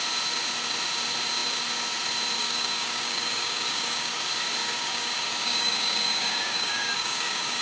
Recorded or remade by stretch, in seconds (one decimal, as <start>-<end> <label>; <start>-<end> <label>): 0.0-2.4 recorded; 2.4-4.1 remade; 4.1-4.6 recorded; 4.6-7.6 remade